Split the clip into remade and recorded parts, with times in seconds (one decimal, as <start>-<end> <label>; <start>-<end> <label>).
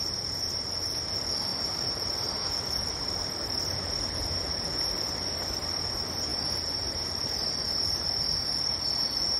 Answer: 0.0-9.4 recorded